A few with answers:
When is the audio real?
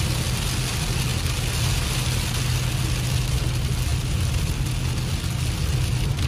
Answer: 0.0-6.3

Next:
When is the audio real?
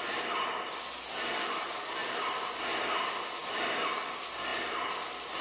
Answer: 0.0-2.0; 2.6-5.4